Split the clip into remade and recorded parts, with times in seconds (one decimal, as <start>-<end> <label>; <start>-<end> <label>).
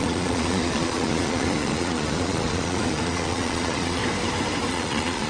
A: 0.0-4.0 remade; 4.0-4.7 recorded; 4.7-5.3 remade